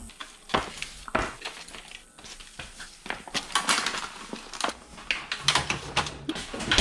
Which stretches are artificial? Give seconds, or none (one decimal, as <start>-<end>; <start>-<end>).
none